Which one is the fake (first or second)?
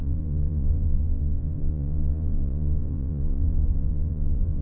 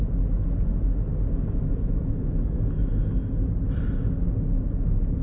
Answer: first